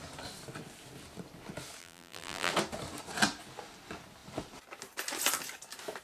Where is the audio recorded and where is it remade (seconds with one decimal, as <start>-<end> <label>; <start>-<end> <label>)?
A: 0.0-1.8 recorded; 1.8-2.5 remade; 2.5-6.0 recorded